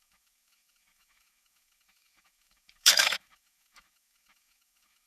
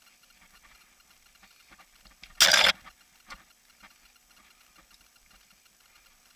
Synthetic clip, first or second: first